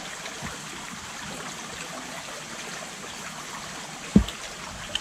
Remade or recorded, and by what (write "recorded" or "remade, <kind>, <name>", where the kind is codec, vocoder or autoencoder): recorded